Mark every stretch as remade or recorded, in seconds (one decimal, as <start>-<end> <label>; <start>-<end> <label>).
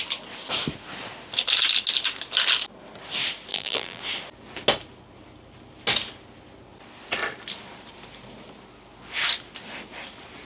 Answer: 0.0-3.5 recorded; 3.5-4.0 remade; 4.0-10.4 recorded